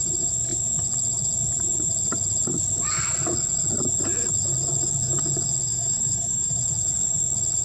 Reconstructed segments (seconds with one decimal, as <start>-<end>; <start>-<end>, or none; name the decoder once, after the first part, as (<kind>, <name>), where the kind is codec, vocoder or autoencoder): 5.7-6.6 (autoencoder, DAC-VAE)